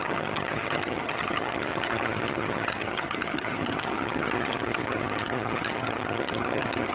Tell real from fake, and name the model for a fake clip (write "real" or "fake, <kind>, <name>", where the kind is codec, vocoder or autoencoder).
fake, vocoder, HiFi-GAN